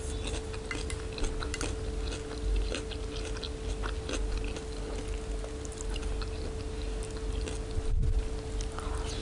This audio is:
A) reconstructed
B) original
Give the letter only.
B